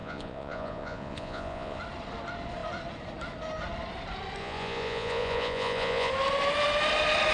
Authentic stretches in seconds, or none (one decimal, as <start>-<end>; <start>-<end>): 1.8-4.4; 6.1-7.3